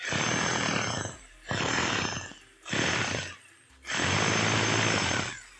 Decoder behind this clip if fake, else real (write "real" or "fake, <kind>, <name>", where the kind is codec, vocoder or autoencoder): real